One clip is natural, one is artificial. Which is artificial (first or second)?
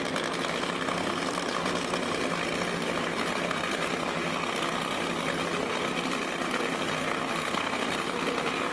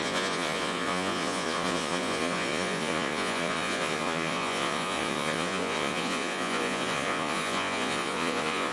second